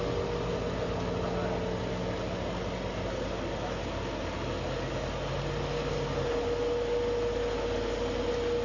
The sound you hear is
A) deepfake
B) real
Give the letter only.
B